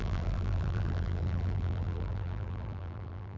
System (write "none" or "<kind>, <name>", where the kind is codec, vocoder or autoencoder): vocoder, BigVGAN v2